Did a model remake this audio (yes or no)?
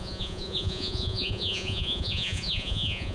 yes